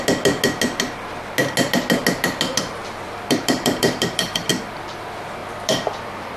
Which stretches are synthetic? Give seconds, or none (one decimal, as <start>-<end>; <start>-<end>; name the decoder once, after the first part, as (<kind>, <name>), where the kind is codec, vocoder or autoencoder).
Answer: 2.8-4.5 (vocoder, BigVGAN v2); 5.4-6.4